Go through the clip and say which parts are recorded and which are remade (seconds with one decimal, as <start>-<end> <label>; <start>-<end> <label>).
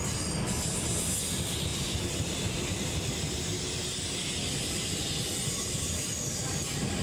0.0-7.0 recorded